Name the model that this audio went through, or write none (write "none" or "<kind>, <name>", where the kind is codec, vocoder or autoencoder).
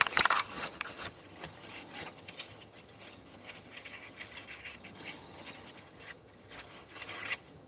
vocoder, HiFi-GAN